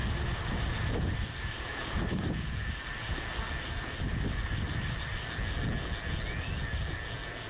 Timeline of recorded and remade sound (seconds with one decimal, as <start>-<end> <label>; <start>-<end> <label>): 0.0-7.5 recorded